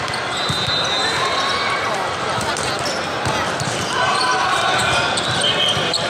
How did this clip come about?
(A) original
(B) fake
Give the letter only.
A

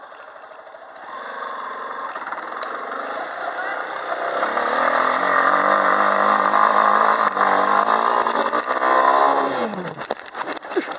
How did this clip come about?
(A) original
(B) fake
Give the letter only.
A